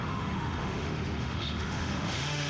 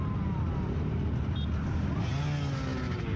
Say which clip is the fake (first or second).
first